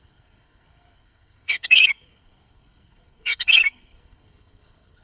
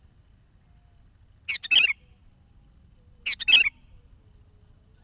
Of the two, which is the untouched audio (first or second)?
second